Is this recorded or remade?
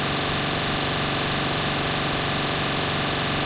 recorded